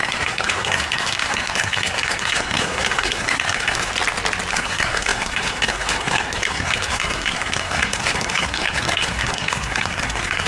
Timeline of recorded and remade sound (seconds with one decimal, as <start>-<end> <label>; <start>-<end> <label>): 0.0-3.9 remade; 3.9-4.5 recorded; 4.5-10.5 remade